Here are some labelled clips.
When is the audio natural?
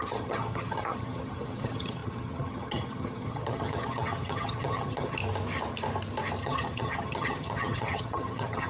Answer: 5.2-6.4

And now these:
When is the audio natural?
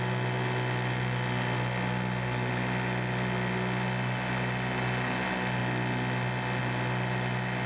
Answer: 0.0-7.7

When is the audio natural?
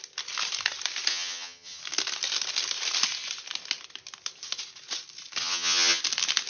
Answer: 0.0-1.1; 1.8-5.4; 6.0-6.5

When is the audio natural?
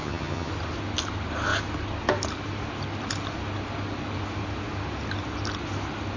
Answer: 0.5-6.2